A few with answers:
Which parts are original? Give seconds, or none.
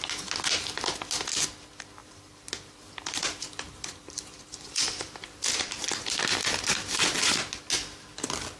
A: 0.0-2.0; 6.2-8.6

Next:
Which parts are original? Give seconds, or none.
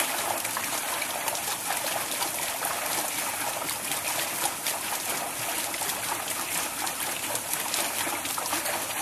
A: 0.0-9.0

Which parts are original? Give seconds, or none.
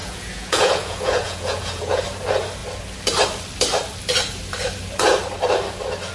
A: 2.0-6.1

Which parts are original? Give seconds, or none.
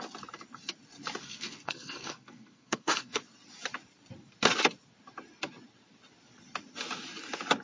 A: 0.0-1.2; 3.2-7.6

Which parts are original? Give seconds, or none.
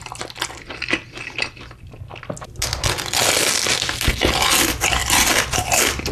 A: 0.0-5.0